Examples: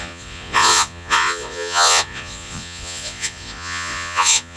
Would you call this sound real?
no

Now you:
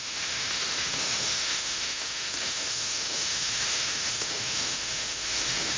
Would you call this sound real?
no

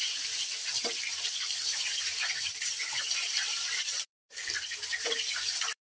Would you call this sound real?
no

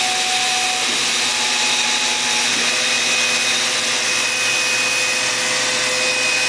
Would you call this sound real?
yes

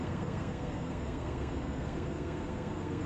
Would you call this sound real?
no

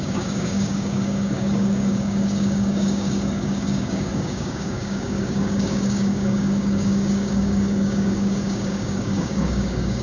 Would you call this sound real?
no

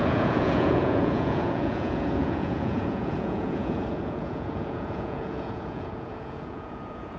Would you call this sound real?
no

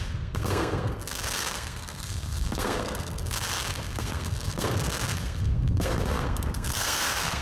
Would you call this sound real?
no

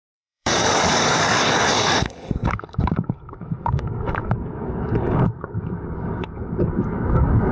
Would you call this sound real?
no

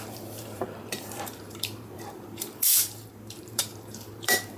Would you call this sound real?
no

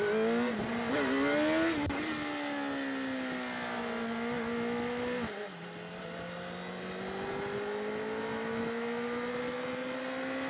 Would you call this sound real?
yes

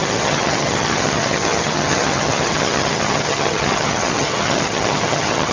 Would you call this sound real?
no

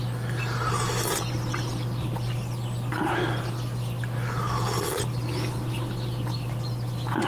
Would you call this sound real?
yes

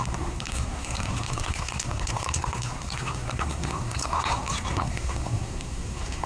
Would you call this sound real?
no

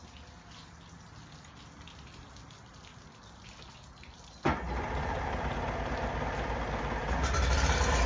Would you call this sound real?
yes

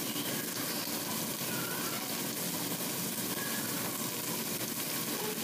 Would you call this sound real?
yes